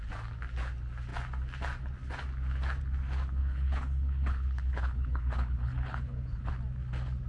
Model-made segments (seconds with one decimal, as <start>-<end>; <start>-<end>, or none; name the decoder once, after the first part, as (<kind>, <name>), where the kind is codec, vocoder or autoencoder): 3.4-6.5 (codec, HILCodec)